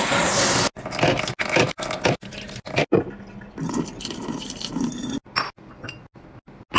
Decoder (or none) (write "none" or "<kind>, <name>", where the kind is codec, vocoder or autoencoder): none